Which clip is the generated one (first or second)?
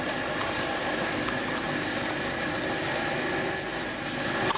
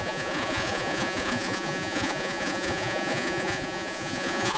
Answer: second